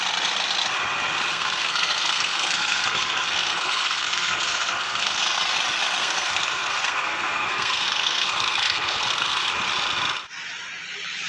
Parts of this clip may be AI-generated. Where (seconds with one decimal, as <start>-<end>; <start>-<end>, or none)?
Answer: 1.3-5.2; 6.0-9.5